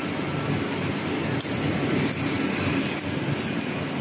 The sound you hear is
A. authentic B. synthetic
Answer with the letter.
A